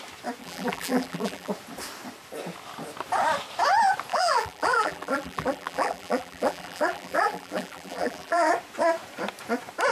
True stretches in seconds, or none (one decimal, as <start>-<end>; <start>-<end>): 0.0-0.4; 1.5-4.1; 8.5-9.9